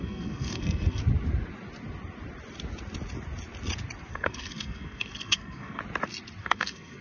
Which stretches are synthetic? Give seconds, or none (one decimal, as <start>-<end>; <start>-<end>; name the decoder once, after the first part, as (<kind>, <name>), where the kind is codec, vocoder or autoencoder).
0.0-1.0 (codec, SNAC); 4.1-5.8; 6.4-7.0